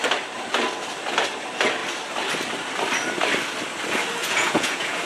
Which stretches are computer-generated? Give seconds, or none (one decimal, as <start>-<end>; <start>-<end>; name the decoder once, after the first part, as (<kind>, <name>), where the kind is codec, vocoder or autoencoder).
4.2-5.1 (vocoder, Vocos)